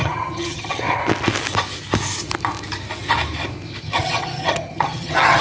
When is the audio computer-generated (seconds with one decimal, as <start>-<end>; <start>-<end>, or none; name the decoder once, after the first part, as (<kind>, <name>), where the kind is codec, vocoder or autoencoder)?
0.0-1.0 (vocoder, HiFi-GAN); 3.8-5.4